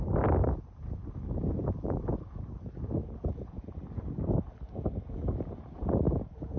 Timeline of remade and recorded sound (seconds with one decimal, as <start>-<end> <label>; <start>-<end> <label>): 0.0-6.6 recorded

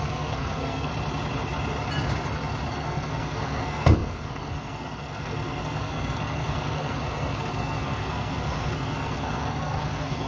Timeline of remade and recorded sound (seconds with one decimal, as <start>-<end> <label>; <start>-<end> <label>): 0.0-0.9 remade; 0.9-2.7 recorded; 2.7-10.3 remade

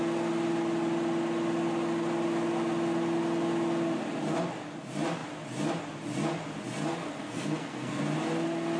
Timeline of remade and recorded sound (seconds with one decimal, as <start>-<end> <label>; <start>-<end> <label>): 0.0-7.0 recorded; 7.0-8.0 remade; 8.0-8.8 recorded

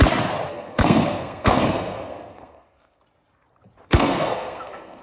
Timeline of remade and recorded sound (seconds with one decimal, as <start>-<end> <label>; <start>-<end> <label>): 0.0-0.5 recorded; 0.5-3.0 remade; 3.0-3.8 recorded; 3.8-5.0 remade

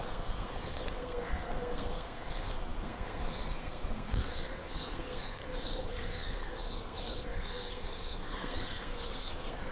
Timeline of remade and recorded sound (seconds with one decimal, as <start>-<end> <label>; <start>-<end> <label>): 0.0-9.7 remade

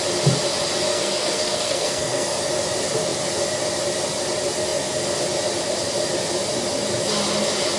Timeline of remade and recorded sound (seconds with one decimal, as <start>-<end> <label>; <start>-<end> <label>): 0.0-0.9 recorded; 0.9-2.4 remade; 2.4-7.8 recorded

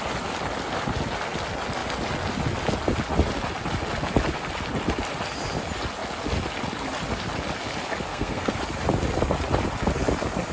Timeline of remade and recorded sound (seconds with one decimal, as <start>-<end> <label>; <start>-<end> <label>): 0.0-8.1 recorded; 8.1-8.6 remade; 8.6-10.5 recorded

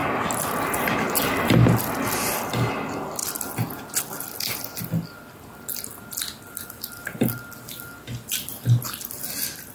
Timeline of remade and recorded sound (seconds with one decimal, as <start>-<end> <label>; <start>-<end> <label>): 0.0-9.7 recorded